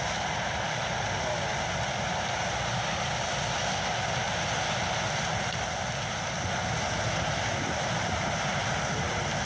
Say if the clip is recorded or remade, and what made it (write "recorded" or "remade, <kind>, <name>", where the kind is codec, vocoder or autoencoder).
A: recorded